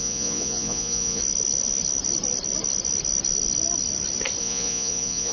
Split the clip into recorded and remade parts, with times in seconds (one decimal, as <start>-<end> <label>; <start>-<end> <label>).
0.0-1.2 remade; 1.2-4.4 recorded; 4.4-5.3 remade